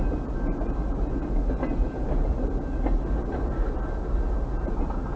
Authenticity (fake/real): real